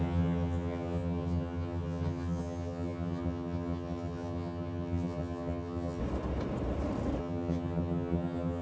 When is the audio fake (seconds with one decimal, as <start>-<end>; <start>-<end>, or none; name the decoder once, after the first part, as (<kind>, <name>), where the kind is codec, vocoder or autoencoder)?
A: 0.0-6.0 (vocoder, HiFi-GAN); 7.2-8.6